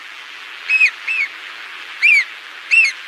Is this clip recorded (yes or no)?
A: no